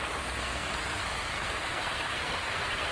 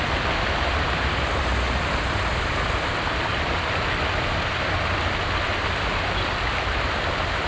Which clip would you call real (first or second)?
second